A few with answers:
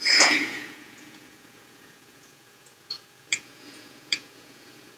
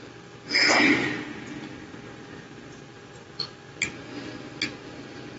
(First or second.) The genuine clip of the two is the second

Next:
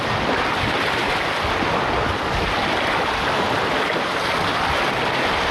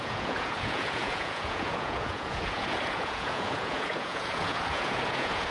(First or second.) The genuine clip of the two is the first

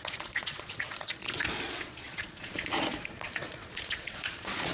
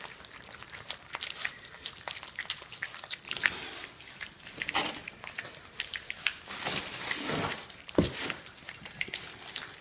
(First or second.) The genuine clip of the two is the second